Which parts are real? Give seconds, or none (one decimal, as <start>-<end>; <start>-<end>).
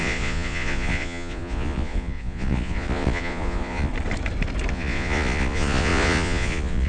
3.9-4.7